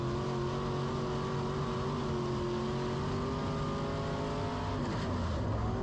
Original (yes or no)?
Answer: yes